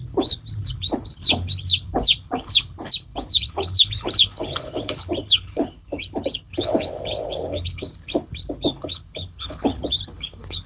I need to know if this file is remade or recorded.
remade